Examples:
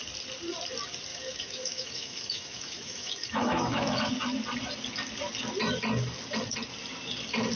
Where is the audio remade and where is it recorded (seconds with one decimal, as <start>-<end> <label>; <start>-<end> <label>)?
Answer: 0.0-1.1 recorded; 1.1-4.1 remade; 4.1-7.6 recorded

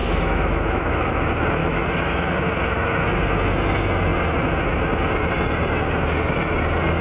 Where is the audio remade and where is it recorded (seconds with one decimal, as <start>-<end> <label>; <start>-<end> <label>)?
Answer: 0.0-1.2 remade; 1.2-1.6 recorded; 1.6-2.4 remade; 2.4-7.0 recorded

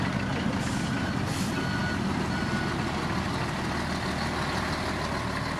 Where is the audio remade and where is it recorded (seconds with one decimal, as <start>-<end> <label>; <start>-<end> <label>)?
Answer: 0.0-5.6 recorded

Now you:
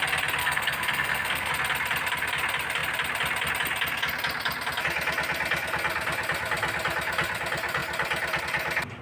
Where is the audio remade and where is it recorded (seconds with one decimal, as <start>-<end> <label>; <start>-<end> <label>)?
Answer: 0.0-0.4 recorded; 0.4-1.5 remade; 1.5-9.0 recorded

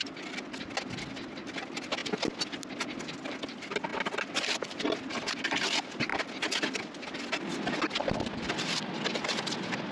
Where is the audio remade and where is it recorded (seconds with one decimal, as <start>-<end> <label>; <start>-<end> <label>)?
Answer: 0.0-9.9 recorded

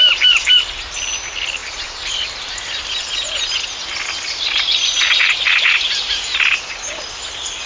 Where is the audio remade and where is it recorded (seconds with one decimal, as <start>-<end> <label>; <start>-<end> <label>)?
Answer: 0.0-7.7 recorded

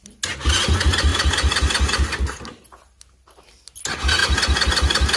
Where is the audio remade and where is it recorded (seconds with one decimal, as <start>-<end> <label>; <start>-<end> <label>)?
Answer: 0.0-5.2 recorded

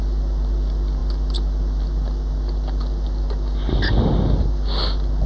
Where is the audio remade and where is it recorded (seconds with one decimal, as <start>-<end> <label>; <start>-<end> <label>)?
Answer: 0.0-5.3 recorded